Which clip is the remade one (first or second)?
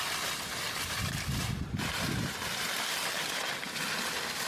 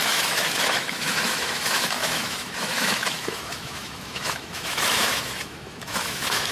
second